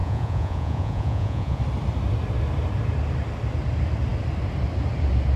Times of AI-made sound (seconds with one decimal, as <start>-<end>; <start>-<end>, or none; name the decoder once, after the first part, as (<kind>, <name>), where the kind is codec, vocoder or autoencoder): 0.0-1.6 (vocoder, Vocos)